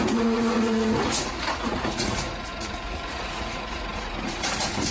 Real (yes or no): no